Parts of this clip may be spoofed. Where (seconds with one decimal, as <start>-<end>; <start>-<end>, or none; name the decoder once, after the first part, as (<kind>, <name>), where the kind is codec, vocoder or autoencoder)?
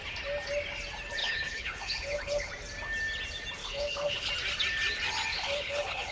1.2-2.5 (codec, HILCodec); 3.6-4.3; 5.3-6.1